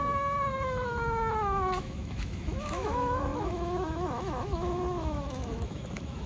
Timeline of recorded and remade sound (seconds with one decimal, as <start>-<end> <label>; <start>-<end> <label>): 0.0-6.3 remade